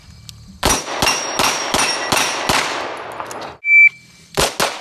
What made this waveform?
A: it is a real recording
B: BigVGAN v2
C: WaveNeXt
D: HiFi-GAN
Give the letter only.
A